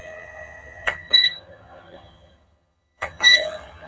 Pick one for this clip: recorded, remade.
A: remade